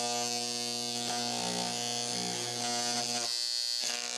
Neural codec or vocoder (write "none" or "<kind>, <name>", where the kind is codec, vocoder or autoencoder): none